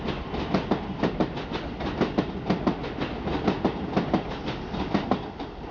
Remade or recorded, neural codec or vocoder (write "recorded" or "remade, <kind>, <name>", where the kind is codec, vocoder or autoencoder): recorded